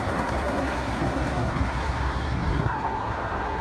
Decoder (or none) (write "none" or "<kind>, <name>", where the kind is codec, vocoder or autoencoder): codec, SNAC